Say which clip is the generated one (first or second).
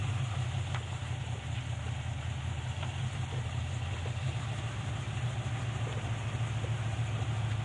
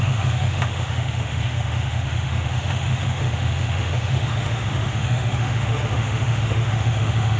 second